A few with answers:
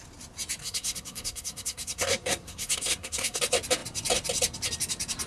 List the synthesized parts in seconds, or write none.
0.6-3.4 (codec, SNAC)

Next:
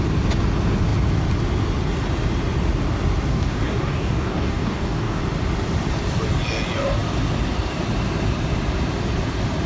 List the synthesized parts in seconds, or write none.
3.3-5.2 (codec, DAC)

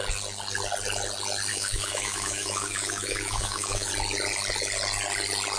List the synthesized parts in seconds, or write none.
1.5-3.9 (autoencoder, DAC-VAE)

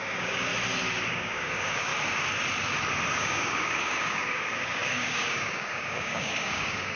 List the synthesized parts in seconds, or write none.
0.0-0.5 (codec, DAC); 1.1-1.9; 3.1-7.0

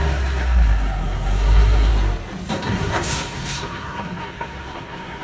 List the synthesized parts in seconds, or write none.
0.0-1.9 (codec, SNAC); 2.5-5.2

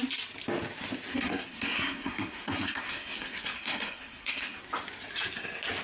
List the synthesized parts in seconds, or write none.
1.1-4.6 (codec, SNAC)

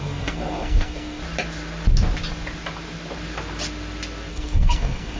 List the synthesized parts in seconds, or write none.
0.0-1.2 (codec, SNAC); 4.3-5.2

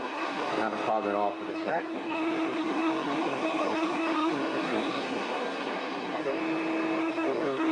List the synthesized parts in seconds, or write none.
0.0-0.5 (codec, SNAC); 1.5-6.4; 7.0-7.7